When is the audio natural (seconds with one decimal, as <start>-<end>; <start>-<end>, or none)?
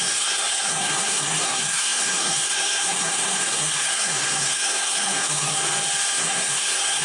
5.6-6.2